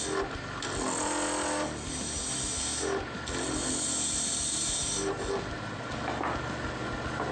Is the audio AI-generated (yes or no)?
no